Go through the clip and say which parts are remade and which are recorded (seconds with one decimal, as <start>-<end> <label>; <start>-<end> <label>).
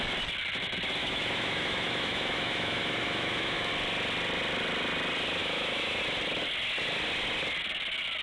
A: 0.0-1.0 recorded; 1.0-3.7 remade; 3.7-5.4 recorded; 5.4-6.0 remade; 6.0-8.2 recorded